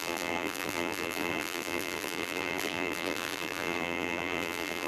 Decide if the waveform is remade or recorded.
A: remade